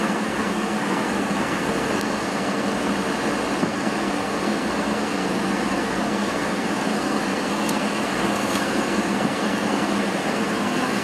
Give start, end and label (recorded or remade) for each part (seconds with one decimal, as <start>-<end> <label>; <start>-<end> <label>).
0.0-2.9 remade; 2.9-3.6 recorded; 3.6-11.0 remade